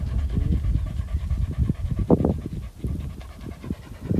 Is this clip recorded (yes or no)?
yes